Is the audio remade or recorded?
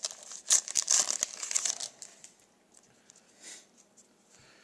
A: recorded